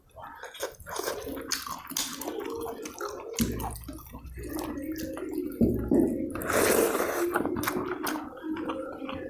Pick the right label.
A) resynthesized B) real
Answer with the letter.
B